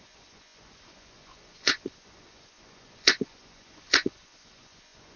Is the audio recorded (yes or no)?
no